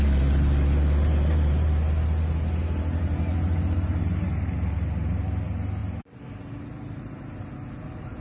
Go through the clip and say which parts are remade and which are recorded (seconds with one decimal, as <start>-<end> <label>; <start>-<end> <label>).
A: 0.0-8.2 recorded